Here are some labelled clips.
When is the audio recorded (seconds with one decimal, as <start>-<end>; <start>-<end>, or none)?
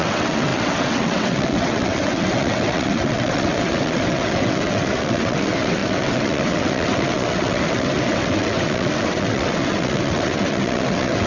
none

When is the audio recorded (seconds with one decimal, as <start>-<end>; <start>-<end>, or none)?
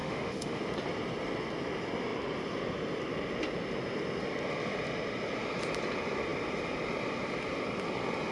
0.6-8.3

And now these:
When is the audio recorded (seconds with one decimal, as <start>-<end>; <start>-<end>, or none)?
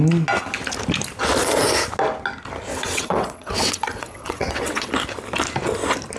0.0-2.7; 4.9-6.2